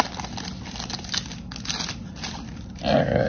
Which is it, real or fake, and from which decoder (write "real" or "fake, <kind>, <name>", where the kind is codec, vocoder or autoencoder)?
real